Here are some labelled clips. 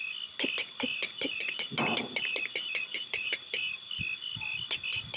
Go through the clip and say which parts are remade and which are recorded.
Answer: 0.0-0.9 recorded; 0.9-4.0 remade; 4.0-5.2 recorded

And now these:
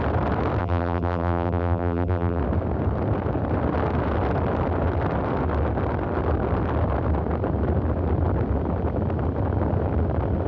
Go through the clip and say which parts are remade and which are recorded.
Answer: 0.0-0.6 recorded; 0.6-2.4 remade; 2.4-10.5 recorded

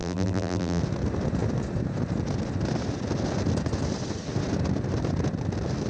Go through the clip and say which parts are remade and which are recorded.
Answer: 0.0-0.8 remade; 0.8-5.9 recorded

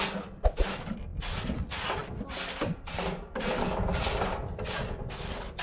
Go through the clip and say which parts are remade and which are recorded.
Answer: 0.0-5.6 recorded